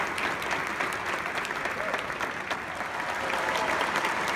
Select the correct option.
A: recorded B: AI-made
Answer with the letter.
A